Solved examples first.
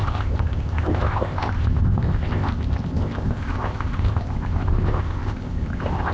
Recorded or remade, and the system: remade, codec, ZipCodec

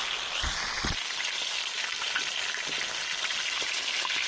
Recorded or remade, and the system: recorded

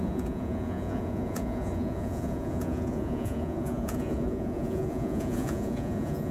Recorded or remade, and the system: remade, vocoder, Vocos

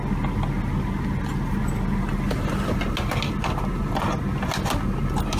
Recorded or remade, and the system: recorded